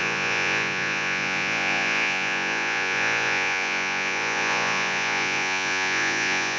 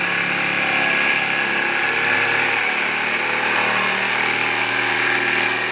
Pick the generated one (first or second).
first